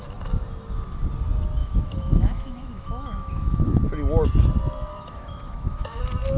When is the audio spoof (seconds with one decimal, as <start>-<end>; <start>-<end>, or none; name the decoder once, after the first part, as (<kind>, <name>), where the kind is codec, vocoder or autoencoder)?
1.6-3.8 (autoencoder, DAC-VAE); 4.9-6.0